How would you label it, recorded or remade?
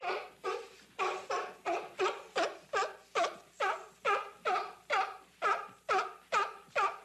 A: recorded